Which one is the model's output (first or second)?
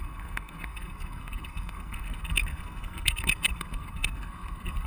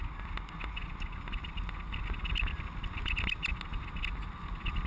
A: first